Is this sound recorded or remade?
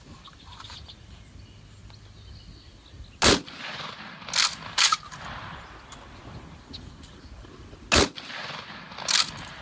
recorded